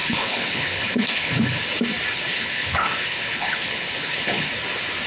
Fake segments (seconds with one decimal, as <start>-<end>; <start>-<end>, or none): 0.0-1.6; 2.3-4.5

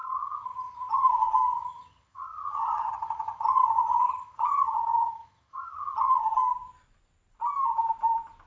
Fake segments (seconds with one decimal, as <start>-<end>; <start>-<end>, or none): 0.0-1.1; 1.5-6.2

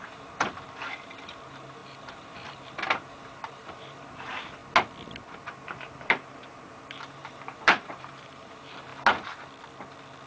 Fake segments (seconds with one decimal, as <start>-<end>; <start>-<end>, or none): 0.0-4.6; 5.5-8.9

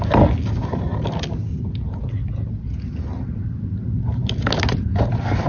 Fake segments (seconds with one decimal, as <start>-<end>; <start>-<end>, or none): none

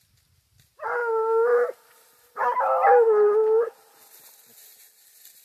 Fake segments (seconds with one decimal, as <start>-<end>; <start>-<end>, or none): none